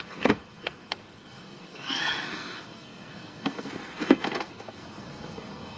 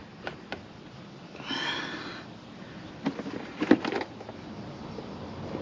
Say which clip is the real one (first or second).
second